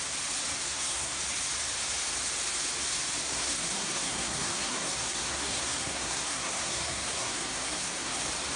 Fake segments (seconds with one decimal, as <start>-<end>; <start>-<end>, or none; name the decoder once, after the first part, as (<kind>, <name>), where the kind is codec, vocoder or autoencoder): 0.6-1.2 (codec, SNAC); 3.2-8.2